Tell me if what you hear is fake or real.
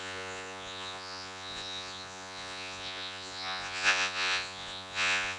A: fake